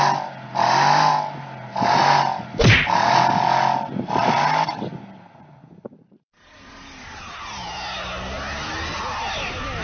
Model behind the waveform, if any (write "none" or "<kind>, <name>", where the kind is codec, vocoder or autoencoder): none